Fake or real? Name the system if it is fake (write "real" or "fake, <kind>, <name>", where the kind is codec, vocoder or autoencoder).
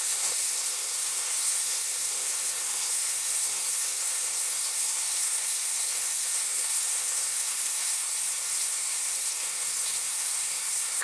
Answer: fake, codec, SNAC